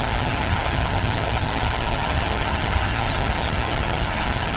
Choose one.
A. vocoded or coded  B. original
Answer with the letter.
A